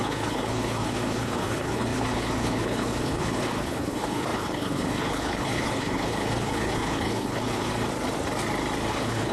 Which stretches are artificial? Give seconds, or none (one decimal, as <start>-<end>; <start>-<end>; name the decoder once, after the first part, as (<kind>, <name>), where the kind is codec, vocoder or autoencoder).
0.0-7.7 (codec, HILCodec); 8.9-9.3

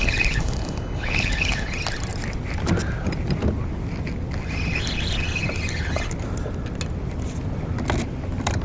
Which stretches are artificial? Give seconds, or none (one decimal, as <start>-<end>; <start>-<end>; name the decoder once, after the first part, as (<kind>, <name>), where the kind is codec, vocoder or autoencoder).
0.0-1.7 (codec, HILCodec)

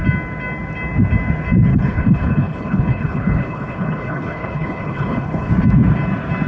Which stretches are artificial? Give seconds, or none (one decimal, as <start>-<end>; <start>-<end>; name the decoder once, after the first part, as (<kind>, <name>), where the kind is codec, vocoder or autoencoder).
1.7-5.5 (codec, HILCodec)

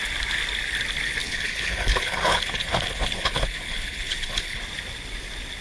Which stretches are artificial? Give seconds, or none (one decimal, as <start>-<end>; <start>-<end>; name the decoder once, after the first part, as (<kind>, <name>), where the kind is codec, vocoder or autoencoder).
1.2-4.6 (codec, HILCodec)

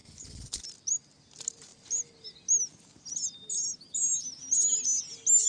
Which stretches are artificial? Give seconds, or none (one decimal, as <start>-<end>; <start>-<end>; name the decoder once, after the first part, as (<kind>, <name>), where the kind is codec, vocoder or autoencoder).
0.0-0.6 (codec, HILCodec)